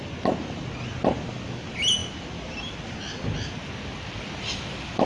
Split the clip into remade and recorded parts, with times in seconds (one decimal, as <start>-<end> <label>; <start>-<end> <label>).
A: 0.0-5.1 recorded